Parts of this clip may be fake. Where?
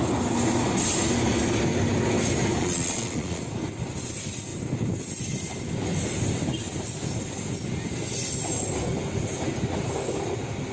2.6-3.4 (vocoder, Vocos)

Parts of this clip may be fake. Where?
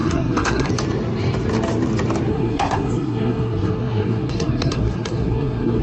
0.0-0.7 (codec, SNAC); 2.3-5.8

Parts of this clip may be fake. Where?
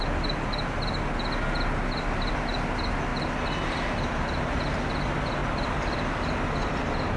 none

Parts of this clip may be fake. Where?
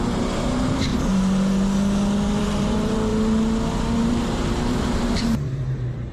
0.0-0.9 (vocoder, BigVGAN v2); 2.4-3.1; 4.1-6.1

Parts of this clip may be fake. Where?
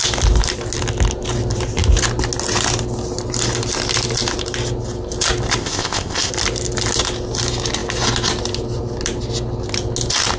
5.6-6.3 (codec, ZipCodec)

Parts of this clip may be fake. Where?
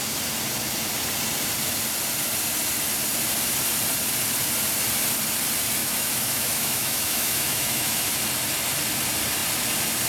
5.8-8.2 (autoencoder, DAC-VAE)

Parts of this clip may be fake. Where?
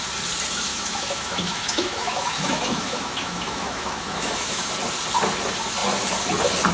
0.7-4.7 (autoencoder, DAC-VAE)